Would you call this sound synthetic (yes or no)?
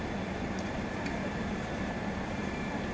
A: yes